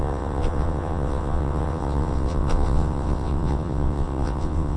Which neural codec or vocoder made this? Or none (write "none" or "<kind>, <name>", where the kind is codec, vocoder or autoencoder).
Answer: vocoder, WaveNeXt